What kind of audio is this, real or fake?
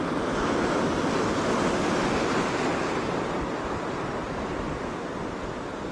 real